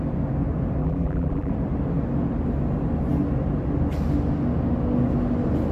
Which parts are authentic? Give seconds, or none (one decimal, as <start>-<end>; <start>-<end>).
0.0-0.8; 1.5-5.7